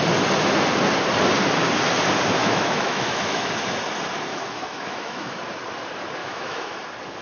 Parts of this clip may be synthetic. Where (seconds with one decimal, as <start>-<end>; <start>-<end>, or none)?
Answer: 2.4-3.5; 4.3-5.4; 6.2-6.8